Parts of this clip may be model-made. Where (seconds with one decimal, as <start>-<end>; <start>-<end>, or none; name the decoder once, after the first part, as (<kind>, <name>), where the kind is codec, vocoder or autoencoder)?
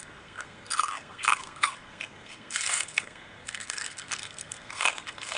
0.0-5.4 (codec, SNAC)